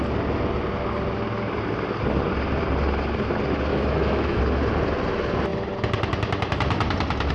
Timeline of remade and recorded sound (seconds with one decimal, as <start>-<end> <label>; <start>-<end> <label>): 0.0-3.7 recorded; 3.7-4.4 remade; 4.4-7.3 recorded